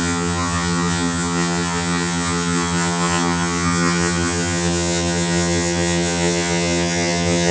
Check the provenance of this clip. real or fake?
fake